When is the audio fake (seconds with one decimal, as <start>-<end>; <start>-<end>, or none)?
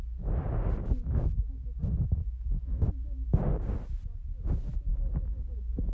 1.0-1.8; 2.2-2.9